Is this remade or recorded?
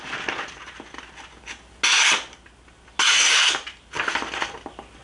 recorded